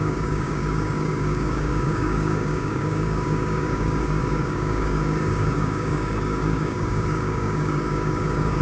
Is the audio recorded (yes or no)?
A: no